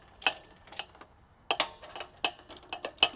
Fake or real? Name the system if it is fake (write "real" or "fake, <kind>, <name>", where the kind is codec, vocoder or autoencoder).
real